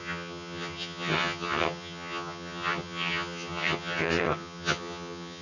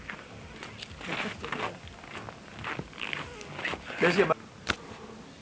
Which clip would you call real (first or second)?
second